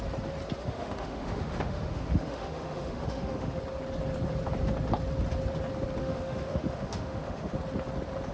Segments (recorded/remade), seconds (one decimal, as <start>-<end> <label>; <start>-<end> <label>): 0.0-0.6 recorded; 0.6-3.6 remade; 3.6-6.0 recorded; 6.0-7.5 remade; 7.5-8.3 recorded